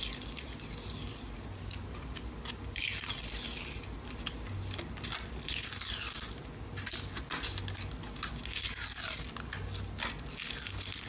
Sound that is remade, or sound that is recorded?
recorded